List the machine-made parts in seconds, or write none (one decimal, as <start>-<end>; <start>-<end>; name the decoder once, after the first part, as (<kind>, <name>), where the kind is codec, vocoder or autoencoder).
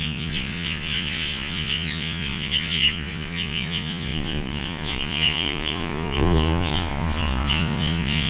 0.0-8.3 (vocoder, Vocos)